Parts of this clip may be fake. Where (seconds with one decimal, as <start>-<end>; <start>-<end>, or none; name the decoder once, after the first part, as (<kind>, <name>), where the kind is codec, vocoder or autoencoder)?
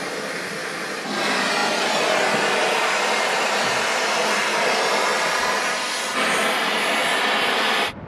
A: 1.6-4.1 (vocoder, BigVGAN v2)